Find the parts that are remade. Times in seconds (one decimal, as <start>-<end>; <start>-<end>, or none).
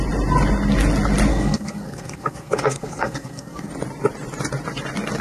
1.3-3.7